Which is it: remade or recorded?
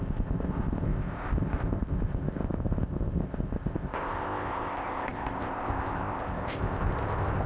remade